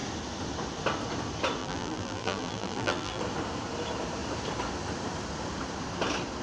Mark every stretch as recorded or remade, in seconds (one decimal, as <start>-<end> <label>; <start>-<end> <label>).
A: 0.0-1.6 recorded; 1.6-3.2 remade; 3.2-6.4 recorded